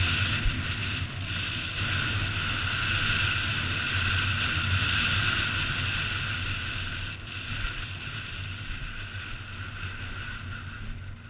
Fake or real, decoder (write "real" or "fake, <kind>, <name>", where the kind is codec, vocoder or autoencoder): real